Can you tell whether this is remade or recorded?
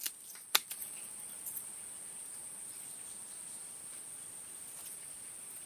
recorded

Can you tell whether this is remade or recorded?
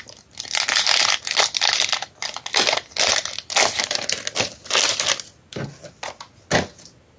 recorded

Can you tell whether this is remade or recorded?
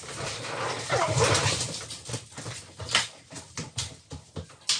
recorded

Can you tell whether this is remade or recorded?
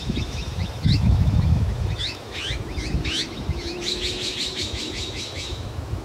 remade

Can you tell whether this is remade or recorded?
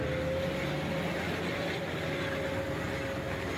recorded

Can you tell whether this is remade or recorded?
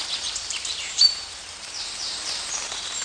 remade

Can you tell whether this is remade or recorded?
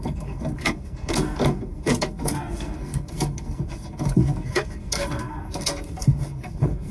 remade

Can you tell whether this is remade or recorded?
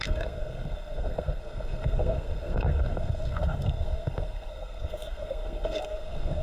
remade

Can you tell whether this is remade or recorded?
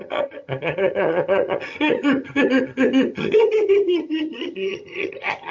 remade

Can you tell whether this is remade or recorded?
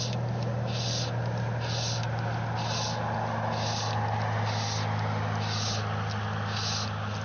recorded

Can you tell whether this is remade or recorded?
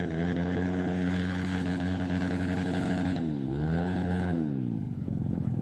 remade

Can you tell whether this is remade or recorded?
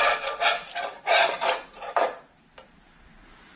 remade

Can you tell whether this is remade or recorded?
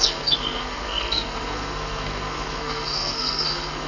remade